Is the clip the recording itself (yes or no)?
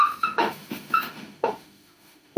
no